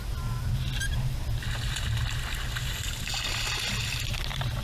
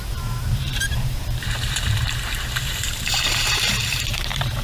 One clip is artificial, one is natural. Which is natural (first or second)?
first